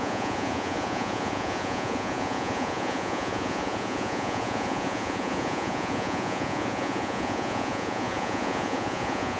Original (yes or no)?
no